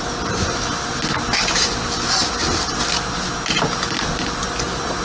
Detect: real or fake real